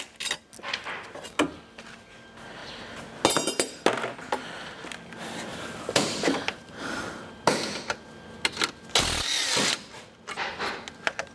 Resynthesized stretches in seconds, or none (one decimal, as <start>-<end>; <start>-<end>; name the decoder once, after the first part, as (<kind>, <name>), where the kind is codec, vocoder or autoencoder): 5.5-6.9 (vocoder, BigVGAN v2)